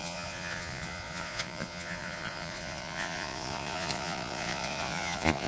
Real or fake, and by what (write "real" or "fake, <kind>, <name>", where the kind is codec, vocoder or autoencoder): fake, vocoder, Vocos